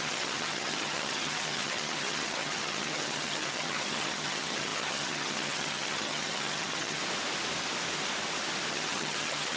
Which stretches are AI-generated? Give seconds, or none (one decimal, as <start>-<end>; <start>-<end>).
0.0-7.0; 8.7-9.6